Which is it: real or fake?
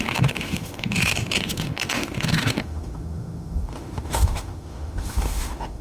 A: fake